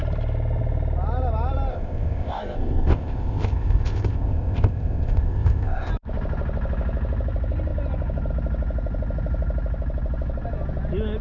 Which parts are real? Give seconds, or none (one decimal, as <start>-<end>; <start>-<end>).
0.0-1.7; 5.9-11.2